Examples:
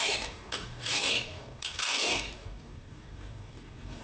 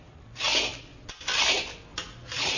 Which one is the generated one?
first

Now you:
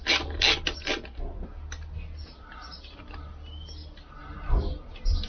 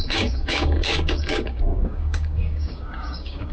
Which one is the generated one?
second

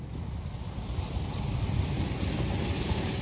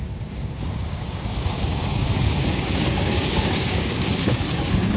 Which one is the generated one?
second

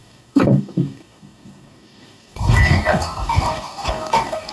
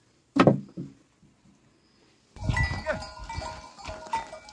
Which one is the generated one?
first